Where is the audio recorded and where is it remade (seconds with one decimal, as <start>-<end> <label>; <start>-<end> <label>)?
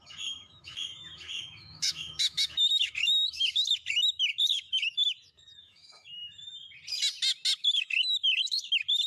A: 0.0-6.6 remade; 6.6-7.6 recorded; 7.6-9.1 remade